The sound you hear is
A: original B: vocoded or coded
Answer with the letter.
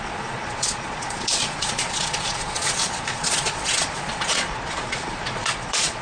B